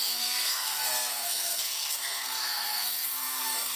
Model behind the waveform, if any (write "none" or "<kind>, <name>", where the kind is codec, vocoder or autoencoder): codec, SNAC